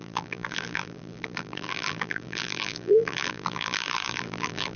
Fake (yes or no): yes